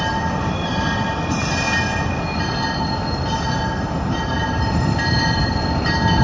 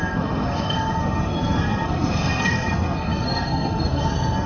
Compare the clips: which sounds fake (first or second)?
second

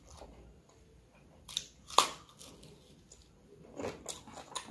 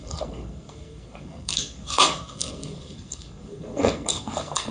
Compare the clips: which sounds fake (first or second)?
second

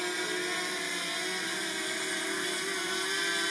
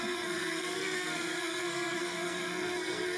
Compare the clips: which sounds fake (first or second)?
second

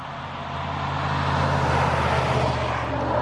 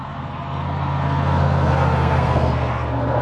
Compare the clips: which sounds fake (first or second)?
second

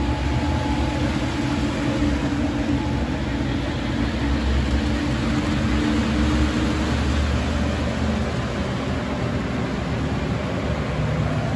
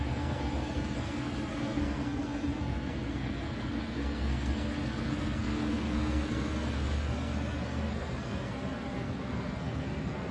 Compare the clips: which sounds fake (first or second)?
second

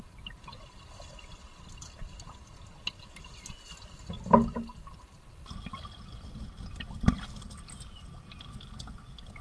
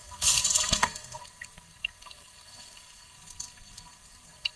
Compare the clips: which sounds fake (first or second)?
second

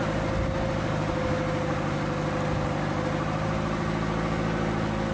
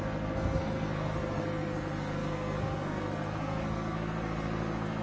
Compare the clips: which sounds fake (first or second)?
second